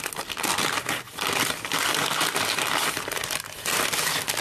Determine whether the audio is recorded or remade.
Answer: recorded